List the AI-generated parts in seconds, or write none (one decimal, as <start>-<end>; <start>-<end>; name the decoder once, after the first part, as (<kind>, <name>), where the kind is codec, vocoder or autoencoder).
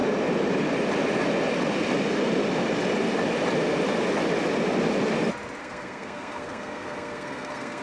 5.6-7.8 (codec, SNAC)